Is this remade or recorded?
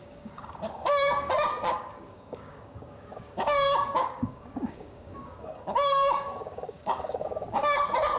remade